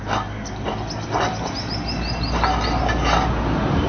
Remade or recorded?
recorded